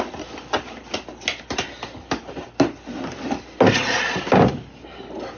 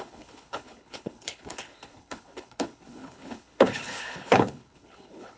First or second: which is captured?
first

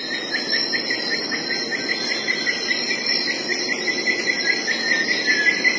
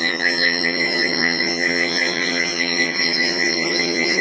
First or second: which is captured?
first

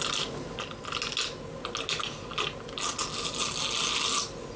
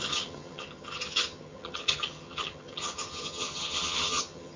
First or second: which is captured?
first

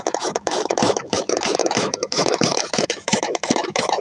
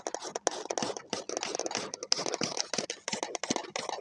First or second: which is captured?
second